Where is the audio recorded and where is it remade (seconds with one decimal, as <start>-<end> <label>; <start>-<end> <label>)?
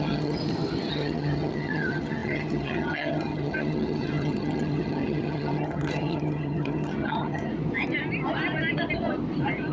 0.0-0.4 remade; 0.4-0.9 recorded; 0.9-7.5 remade; 7.5-9.7 recorded